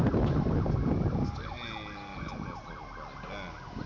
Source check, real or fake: real